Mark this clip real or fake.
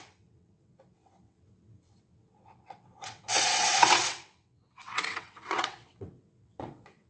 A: fake